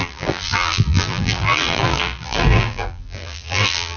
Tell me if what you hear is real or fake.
fake